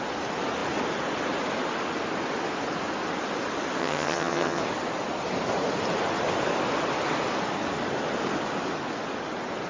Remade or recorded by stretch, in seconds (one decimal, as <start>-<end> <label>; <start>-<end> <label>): 0.0-3.8 recorded; 3.8-4.6 remade; 4.6-9.7 recorded